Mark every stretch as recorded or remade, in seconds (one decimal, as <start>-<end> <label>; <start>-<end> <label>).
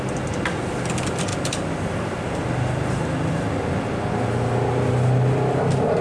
0.0-6.0 recorded